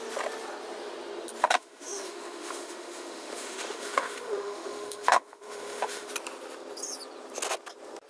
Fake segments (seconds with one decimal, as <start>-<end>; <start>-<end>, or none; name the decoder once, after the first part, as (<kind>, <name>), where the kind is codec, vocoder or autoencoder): 1.4-6.1 (autoencoder, DAC-VAE)